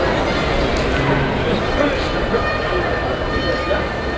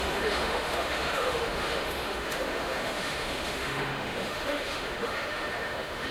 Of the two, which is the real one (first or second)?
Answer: first